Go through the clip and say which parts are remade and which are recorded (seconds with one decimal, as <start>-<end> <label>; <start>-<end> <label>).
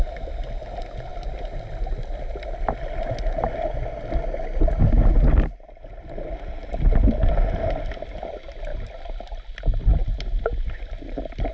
0.0-11.5 recorded